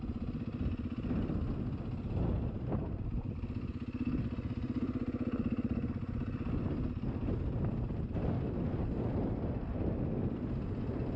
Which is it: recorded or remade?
recorded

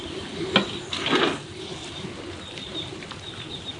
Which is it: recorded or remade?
recorded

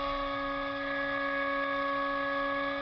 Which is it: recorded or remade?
recorded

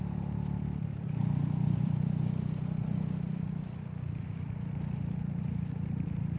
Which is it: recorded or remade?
remade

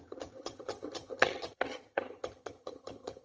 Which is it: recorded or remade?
remade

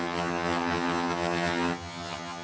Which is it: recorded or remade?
remade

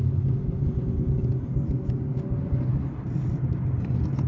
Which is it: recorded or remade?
recorded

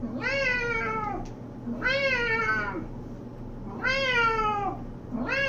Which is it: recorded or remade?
recorded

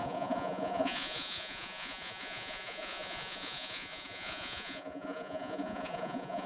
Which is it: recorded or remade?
remade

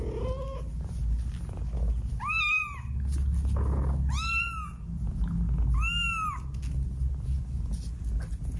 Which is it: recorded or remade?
recorded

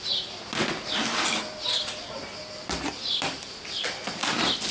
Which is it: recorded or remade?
recorded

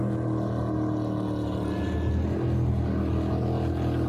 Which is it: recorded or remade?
recorded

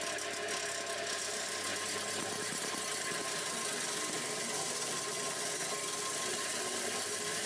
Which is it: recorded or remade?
recorded